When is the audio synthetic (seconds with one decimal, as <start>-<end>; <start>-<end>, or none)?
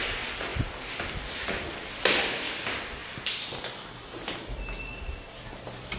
0.0-0.5; 1.6-6.0